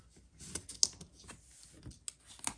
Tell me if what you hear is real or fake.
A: real